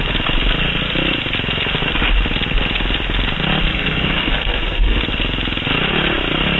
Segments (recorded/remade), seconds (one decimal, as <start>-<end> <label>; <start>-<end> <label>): 0.0-3.7 recorded; 3.7-5.0 remade; 5.0-6.6 recorded